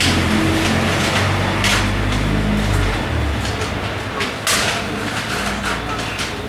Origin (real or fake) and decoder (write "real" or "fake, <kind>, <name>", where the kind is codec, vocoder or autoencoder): real